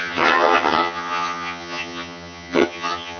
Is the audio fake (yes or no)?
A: yes